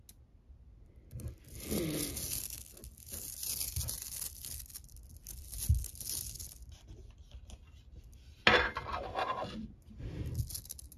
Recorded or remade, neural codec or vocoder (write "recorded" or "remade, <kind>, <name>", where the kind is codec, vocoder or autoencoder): recorded